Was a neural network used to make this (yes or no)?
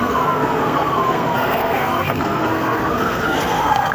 yes